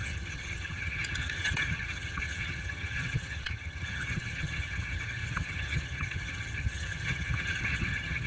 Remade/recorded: remade